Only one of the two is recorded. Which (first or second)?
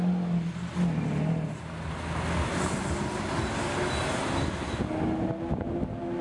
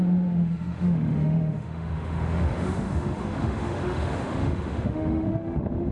first